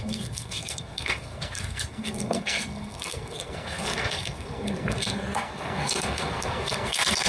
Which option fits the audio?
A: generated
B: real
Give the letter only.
A